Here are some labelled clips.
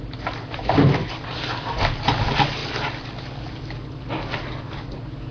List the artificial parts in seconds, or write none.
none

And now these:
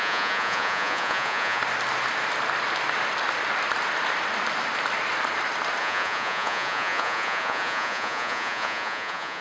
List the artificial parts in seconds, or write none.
0.0-1.6 (vocoder, Vocos); 5.8-9.4